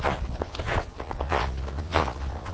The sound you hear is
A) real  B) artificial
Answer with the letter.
B